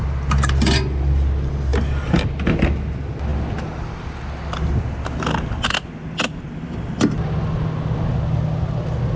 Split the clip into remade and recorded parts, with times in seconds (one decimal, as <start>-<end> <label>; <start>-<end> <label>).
0.0-9.2 recorded